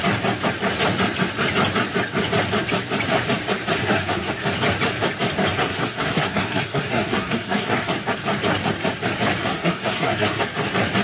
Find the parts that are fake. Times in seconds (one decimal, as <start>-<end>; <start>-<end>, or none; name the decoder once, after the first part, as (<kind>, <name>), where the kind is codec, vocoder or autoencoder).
3.8-4.3 (codec, SNAC); 5.6-7.9; 9.4-10.4

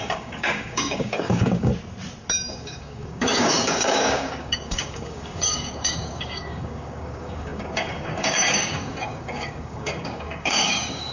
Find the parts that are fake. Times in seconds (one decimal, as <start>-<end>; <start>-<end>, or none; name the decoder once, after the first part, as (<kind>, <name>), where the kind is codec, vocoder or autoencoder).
0.0-1.7 (codec, DAC); 2.5-11.1

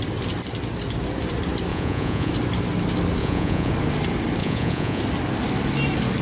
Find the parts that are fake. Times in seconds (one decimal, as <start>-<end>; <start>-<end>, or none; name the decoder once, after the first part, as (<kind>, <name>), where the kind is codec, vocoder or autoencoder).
1.7-2.3 (vocoder, Vocos); 3.2-3.7; 4.4-5.0

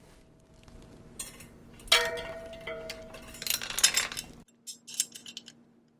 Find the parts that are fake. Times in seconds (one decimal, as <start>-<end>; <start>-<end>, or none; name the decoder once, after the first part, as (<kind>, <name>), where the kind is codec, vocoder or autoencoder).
none